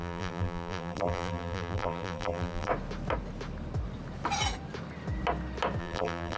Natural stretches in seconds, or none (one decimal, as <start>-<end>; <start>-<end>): 2.7-5.8

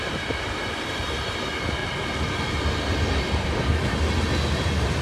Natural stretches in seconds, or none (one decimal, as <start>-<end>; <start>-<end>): 1.8-3.1; 3.7-5.0

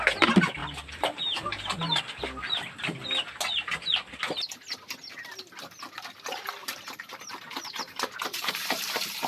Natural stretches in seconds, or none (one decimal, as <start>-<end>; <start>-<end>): 0.0-0.6; 2.0-6.6

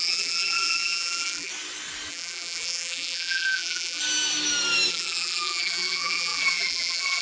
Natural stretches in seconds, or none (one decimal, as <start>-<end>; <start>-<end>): 1.5-2.1; 4.0-4.9

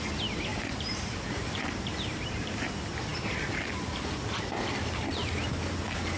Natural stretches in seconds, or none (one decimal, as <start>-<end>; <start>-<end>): 0.0-0.5; 2.7-6.2

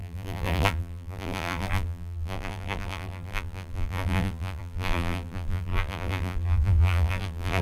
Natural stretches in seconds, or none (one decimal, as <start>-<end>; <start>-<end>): none

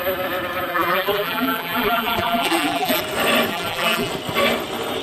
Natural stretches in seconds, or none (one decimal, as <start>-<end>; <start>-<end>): 0.0-0.7; 3.0-3.5; 4.1-5.0

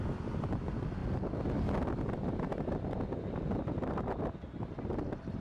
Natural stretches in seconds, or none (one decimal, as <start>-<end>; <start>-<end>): 0.0-5.4